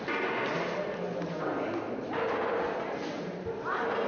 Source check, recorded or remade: recorded